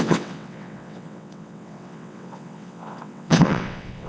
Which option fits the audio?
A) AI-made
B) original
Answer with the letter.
A